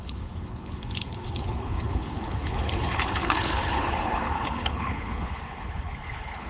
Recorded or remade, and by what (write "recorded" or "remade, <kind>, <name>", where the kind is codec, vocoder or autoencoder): remade, codec, HILCodec